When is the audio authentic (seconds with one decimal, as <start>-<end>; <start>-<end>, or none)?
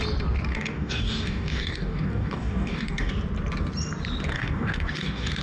0.0-0.5; 3.1-4.3